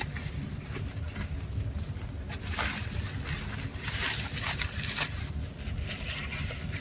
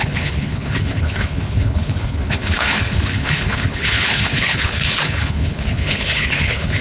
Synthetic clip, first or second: second